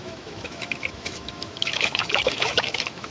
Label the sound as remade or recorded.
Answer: remade